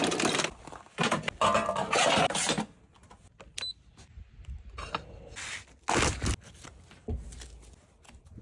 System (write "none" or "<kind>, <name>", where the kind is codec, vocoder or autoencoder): none